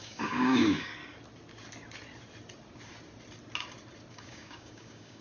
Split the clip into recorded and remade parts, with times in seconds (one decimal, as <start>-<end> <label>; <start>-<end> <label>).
0.0-1.0 remade; 1.0-4.1 recorded; 4.1-5.2 remade